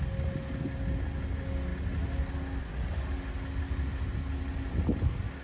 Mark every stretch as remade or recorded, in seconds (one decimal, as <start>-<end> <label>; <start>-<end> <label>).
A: 0.0-5.4 recorded